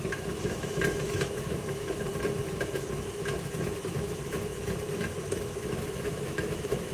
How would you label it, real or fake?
fake